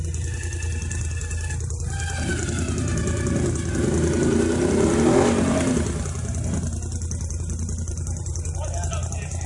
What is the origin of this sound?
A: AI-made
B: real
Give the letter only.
B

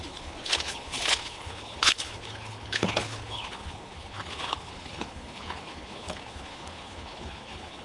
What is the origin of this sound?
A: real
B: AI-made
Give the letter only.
B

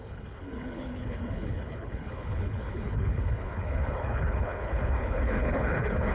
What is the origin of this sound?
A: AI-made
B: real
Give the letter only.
A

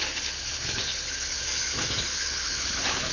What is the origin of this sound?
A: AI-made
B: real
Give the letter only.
A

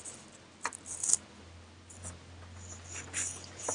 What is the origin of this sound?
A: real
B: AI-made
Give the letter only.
A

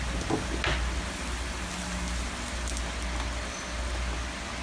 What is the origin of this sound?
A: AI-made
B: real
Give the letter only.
B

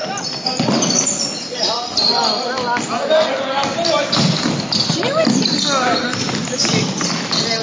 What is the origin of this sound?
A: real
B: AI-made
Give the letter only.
A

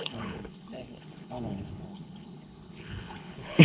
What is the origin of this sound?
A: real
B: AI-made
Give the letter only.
B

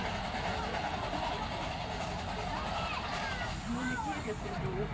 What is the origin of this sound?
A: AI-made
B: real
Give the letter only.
B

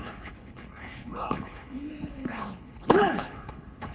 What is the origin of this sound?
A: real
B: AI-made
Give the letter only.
B